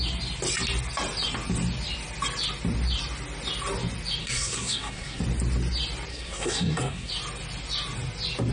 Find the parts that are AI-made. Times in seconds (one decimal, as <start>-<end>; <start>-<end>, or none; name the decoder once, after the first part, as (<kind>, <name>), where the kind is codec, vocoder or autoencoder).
4.2-5.2 (codec, SNAC); 6.1-7.1